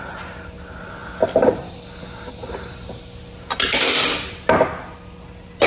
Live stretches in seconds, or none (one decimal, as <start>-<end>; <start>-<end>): 0.0-5.7